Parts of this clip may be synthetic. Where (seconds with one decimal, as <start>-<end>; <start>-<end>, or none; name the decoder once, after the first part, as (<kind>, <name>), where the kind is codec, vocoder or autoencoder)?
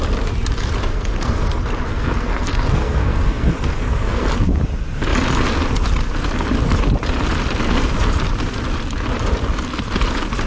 0.9-4.3 (codec, SNAC)